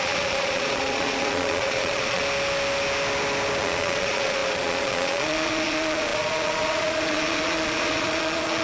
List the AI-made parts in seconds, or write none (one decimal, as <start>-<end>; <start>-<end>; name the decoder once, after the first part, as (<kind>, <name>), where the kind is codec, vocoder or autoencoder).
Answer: 0.0-2.2 (vocoder, Vocos); 3.6-8.6